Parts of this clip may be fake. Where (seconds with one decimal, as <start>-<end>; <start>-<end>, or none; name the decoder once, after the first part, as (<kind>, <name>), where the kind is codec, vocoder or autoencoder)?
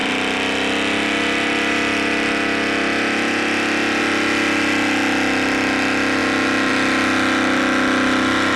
0.0-4.0 (vocoder, BigVGAN v2)